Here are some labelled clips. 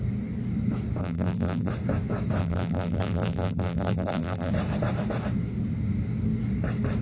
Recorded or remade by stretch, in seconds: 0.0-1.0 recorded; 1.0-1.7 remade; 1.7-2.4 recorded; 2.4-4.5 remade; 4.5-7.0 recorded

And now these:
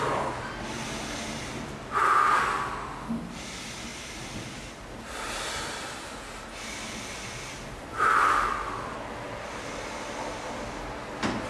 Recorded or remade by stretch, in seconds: 0.0-6.7 recorded; 6.7-8.2 remade; 8.2-11.5 recorded

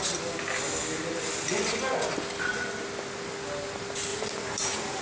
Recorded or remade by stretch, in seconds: 0.0-4.1 recorded; 4.1-5.0 remade

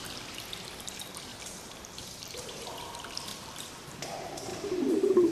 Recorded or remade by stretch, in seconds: 0.0-1.3 recorded; 1.3-2.7 remade; 2.7-3.3 recorded; 3.3-4.0 remade; 4.0-4.5 recorded; 4.5-5.3 remade

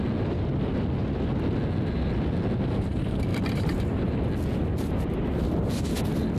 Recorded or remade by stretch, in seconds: 0.0-3.3 recorded; 3.3-4.3 remade; 4.3-4.7 recorded; 4.7-5.7 remade; 5.7-6.4 recorded

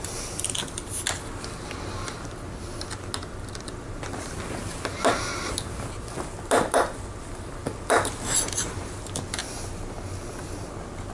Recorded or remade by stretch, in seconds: 0.0-11.1 recorded

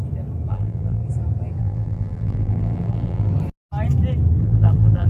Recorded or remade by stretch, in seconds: 0.0-0.5 recorded; 0.5-1.0 remade; 1.0-1.6 recorded; 1.6-3.3 remade; 3.3-4.4 recorded; 4.4-5.1 remade